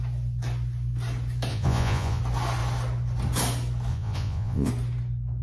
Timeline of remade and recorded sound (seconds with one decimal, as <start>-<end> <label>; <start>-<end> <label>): 0.0-1.5 recorded; 1.5-2.2 remade; 2.2-3.9 recorded; 3.9-4.7 remade; 4.7-5.4 recorded